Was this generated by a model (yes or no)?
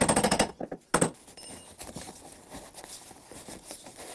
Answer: no